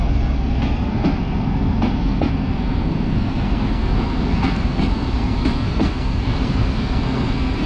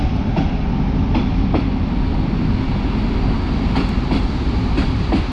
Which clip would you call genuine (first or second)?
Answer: second